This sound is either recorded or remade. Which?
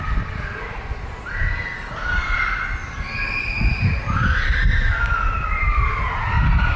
recorded